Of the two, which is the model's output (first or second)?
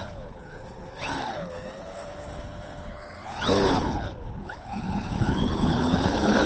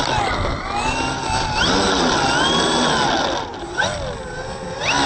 first